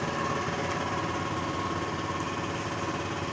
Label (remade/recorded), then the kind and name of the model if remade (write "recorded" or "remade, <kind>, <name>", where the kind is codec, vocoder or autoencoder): recorded